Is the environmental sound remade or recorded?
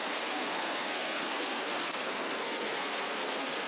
remade